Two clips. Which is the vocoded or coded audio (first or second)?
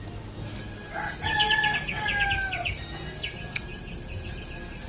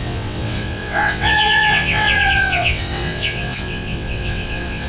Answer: second